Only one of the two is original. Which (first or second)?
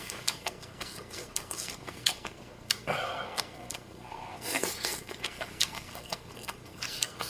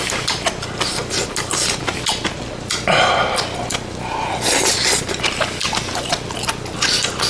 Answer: second